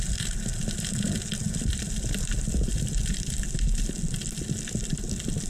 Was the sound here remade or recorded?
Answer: recorded